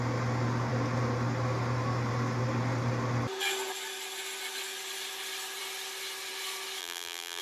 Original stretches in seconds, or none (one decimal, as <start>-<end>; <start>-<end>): 0.0-6.8

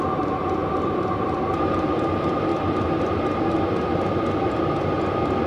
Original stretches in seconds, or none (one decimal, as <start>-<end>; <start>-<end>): 2.5-5.5

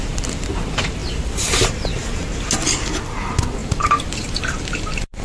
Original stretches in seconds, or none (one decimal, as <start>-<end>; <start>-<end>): 0.0-3.6